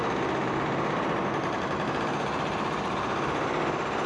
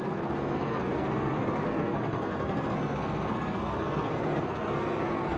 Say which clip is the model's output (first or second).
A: second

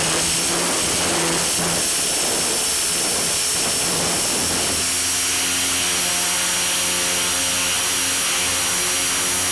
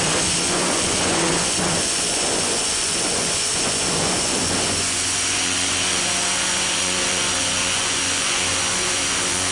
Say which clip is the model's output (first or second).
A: second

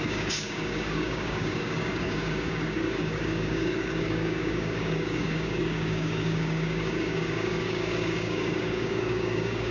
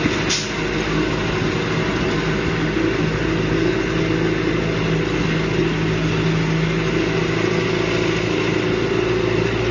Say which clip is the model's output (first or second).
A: first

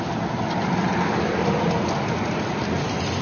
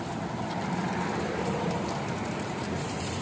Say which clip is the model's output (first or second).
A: second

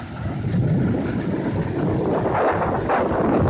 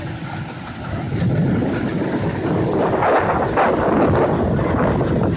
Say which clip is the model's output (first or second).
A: first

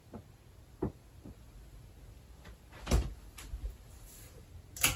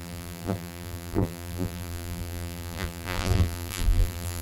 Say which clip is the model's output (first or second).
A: second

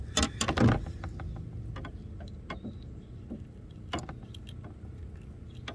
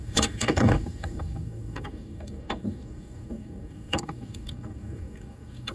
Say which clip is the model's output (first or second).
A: second